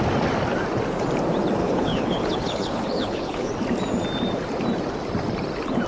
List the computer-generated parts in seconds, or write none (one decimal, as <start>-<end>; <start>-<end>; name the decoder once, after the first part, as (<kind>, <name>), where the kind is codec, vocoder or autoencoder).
1.6-3.5 (codec, HILCodec)